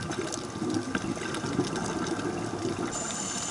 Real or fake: real